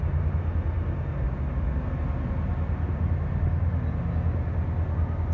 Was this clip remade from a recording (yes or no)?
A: no